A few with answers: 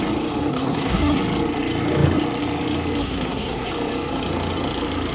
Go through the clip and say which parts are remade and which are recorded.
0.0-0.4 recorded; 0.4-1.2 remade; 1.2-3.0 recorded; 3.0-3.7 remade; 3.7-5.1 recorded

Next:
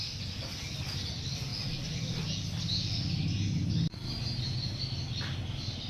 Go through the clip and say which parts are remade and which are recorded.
0.0-5.9 recorded

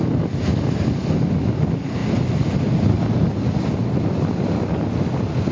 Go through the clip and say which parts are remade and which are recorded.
0.0-5.5 recorded